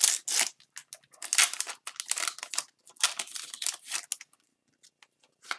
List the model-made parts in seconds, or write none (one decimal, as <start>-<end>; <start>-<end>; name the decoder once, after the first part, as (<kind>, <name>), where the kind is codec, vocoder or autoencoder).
none